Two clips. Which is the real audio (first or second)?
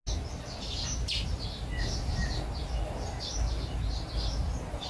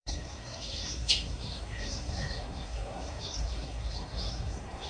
first